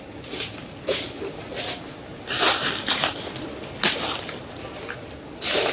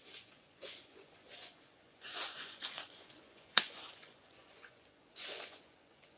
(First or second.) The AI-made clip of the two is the second